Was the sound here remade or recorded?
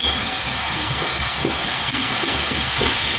remade